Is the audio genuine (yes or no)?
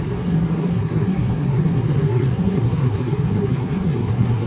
no